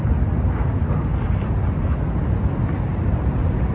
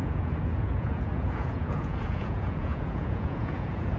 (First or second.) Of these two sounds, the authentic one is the first